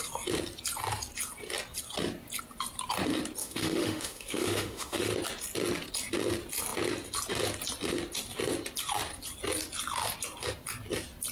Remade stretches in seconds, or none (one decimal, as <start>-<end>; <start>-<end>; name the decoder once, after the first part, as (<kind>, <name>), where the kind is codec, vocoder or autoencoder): 3.4-5.1 (autoencoder, DAC-VAE)